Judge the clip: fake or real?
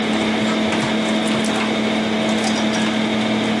real